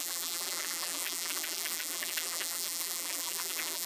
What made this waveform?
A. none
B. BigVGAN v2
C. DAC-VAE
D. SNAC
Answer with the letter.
B